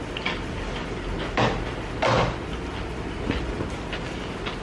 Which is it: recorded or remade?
recorded